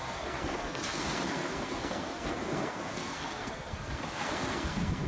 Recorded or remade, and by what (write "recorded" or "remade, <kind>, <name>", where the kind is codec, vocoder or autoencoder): remade, codec, SNAC